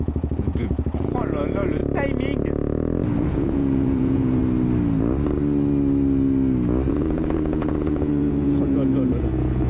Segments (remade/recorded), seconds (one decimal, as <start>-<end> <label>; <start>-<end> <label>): 0.0-1.8 remade; 1.8-3.2 recorded; 3.2-4.4 remade; 4.4-6.9 recorded; 6.9-9.7 remade